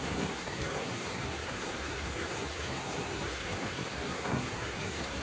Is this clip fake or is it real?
fake